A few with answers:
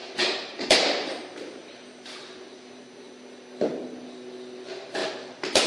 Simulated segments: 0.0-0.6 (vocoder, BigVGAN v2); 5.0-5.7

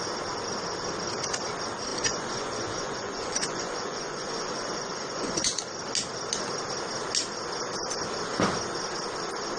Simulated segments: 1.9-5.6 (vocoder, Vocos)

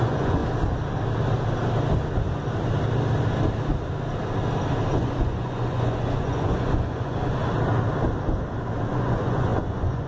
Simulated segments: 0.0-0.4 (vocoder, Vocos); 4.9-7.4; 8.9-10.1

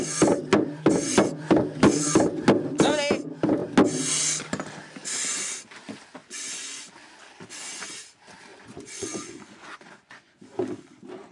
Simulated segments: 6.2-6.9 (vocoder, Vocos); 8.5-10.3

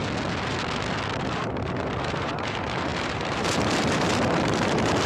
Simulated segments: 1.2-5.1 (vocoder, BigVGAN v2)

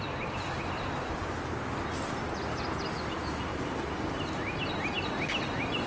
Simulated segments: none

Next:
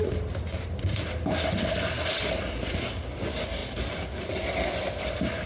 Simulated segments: none

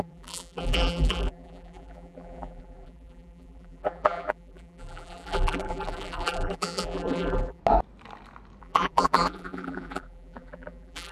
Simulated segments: 0.0-7.6 (vocoder, BigVGAN v2); 8.6-11.1